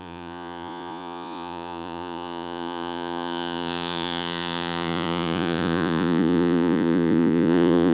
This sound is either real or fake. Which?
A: fake